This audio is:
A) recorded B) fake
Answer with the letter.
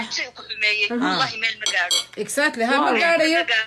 A